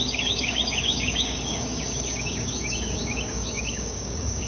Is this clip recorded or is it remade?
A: remade